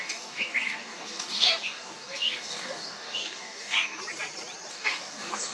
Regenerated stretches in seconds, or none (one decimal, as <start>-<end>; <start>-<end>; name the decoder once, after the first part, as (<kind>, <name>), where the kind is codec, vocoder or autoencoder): 0.0-4.0 (codec, DAC); 4.7-5.5